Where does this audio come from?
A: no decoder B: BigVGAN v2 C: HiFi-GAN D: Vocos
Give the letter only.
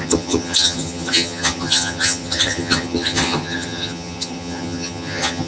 C